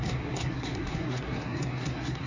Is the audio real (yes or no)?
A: no